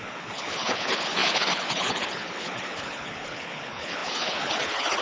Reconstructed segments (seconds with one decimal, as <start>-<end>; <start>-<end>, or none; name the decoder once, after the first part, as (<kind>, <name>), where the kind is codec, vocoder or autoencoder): 0.0-5.0 (codec, HILCodec)